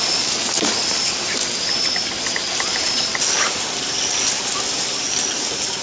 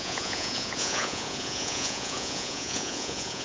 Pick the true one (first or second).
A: first